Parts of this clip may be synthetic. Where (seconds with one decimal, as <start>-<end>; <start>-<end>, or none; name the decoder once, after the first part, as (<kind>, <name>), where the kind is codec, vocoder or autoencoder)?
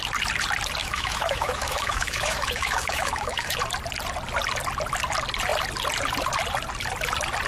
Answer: 0.8-3.6 (autoencoder, DAC-VAE)